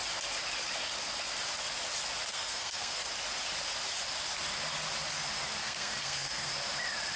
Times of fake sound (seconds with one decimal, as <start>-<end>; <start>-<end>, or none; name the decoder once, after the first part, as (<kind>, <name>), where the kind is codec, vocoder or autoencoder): 2.3-3.0 (codec, SNAC); 5.6-6.5